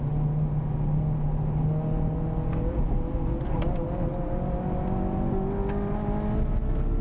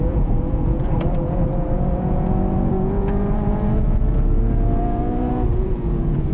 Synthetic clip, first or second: second